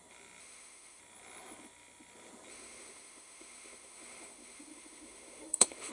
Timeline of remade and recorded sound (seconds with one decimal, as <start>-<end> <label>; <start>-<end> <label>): 0.0-0.4 recorded; 0.4-1.0 remade; 1.0-2.5 recorded; 2.5-5.9 remade